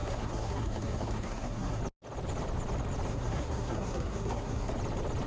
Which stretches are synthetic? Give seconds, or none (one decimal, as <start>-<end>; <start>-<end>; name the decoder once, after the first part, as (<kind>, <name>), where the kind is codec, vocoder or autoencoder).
0.0-1.8 (codec, SNAC); 3.1-4.7